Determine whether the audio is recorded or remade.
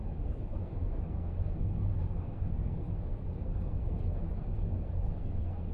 remade